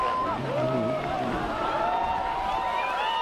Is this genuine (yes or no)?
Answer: no